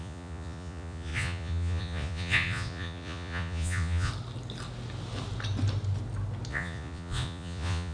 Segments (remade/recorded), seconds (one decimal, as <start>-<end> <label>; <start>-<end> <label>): 0.0-4.1 remade; 4.1-6.5 recorded; 6.5-7.9 remade